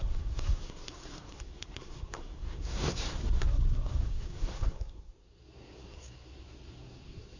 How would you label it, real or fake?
fake